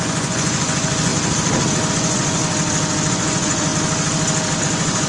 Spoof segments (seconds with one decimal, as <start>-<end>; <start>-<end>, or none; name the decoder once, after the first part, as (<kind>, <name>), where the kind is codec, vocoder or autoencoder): 0.0-1.1 (vocoder, Vocos); 1.9-2.4; 3.1-3.7; 4.6-5.1